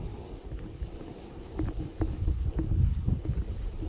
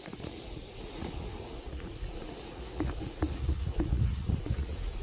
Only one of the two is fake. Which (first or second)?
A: second